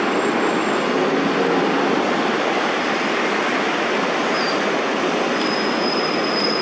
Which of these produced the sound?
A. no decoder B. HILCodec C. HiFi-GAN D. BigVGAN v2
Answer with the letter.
A